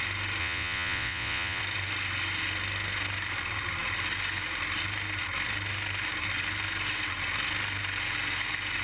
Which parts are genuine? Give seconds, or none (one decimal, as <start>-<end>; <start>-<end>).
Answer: 0.0-0.4; 1.6-8.8